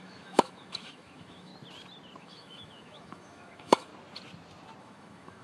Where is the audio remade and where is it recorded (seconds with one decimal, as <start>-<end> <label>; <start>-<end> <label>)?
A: 0.0-1.5 remade; 1.5-2.2 recorded; 2.2-3.9 remade; 3.9-4.8 recorded; 4.8-5.4 remade